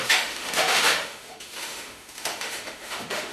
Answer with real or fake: fake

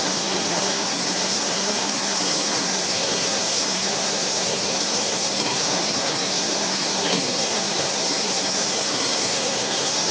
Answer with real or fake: fake